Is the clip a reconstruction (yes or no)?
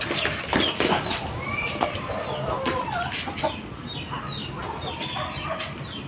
no